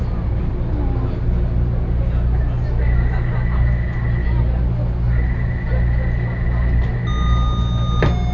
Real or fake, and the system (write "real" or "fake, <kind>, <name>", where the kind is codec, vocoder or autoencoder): real